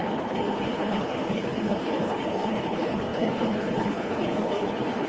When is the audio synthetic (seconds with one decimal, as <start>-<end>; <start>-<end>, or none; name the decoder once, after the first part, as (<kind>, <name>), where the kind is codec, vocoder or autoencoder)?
0.0-5.1 (codec, HILCodec)